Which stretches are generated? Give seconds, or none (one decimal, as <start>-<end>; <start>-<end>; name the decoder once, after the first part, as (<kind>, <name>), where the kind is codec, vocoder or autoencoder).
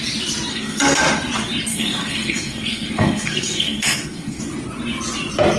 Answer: 0.5-1.0 (codec, SNAC); 1.7-4.4